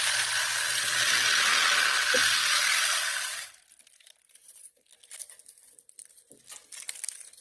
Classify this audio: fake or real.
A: real